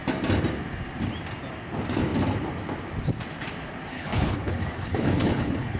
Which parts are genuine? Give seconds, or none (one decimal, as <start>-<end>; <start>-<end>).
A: 0.0-3.9